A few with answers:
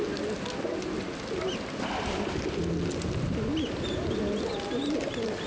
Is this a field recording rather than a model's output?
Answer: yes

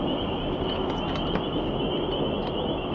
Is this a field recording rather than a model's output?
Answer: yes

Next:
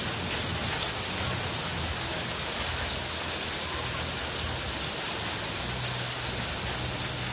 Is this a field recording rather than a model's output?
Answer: yes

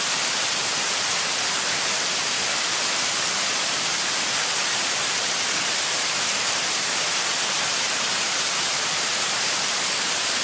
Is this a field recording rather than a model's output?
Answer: no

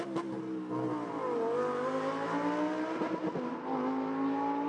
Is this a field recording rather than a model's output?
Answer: yes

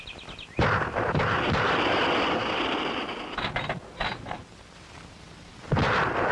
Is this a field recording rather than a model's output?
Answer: no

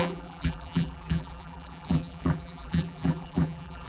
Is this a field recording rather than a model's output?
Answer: no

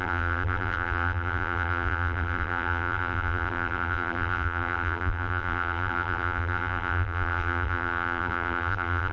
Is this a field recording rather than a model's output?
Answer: no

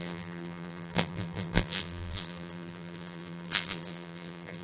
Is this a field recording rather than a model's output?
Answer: no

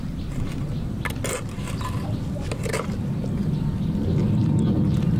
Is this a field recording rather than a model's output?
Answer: yes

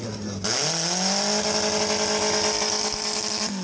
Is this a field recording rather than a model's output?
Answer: yes